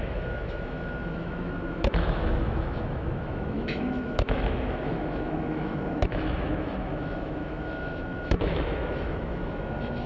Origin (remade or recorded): remade